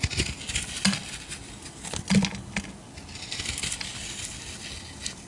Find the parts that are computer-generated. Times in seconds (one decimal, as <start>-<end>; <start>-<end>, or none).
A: none